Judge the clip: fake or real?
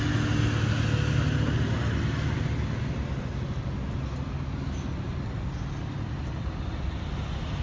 real